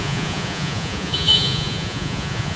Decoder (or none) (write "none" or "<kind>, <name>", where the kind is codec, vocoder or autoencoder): vocoder, Vocos